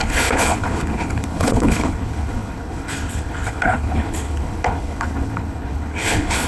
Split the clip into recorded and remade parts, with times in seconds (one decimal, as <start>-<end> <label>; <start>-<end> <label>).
0.0-6.5 remade